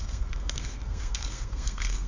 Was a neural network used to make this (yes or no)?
yes